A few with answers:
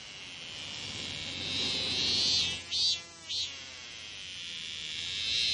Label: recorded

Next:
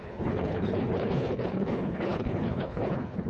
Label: remade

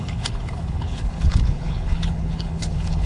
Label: remade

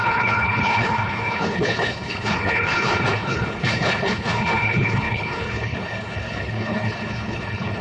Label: remade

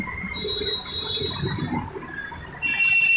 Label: recorded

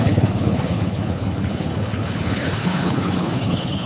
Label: remade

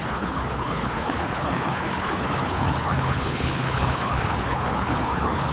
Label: remade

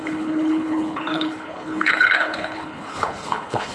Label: remade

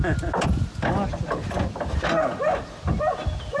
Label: recorded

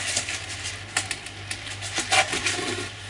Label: recorded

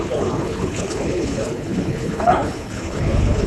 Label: remade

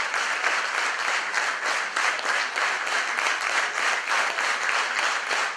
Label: recorded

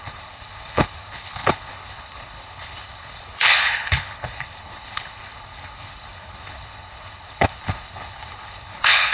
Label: remade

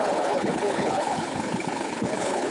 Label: remade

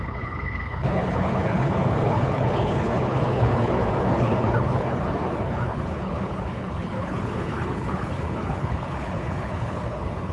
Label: remade